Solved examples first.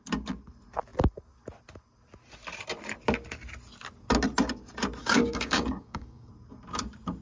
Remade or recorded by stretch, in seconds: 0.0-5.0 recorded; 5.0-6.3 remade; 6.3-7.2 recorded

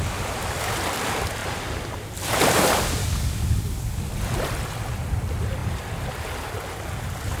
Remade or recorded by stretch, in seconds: 0.0-3.0 recorded; 3.0-4.1 remade; 4.1-7.4 recorded

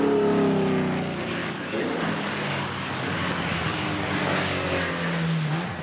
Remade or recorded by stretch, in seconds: 0.0-1.4 recorded; 1.4-4.9 remade; 4.9-5.8 recorded

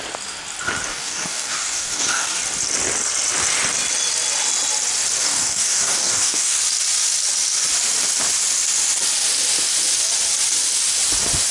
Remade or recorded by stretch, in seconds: 0.0-0.9 recorded; 0.9-2.4 remade; 2.4-5.2 recorded; 5.2-6.6 remade; 6.6-11.5 recorded

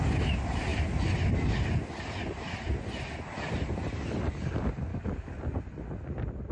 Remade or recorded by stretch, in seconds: 0.0-4.9 recorded; 4.9-5.4 remade; 5.4-6.5 recorded

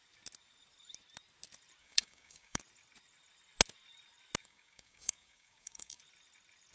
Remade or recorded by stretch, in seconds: 0.0-1.8 recorded; 1.8-2.6 remade; 2.6-4.4 recorded; 4.4-6.0 remade; 6.0-6.7 recorded

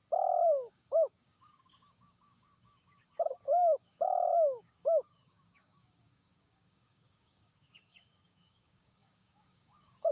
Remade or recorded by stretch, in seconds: 0.0-0.7 recorded; 0.7-10.1 remade